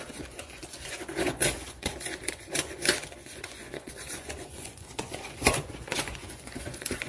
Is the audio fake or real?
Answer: fake